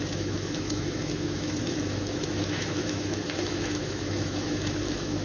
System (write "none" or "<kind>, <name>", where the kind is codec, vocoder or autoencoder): autoencoder, DAC-VAE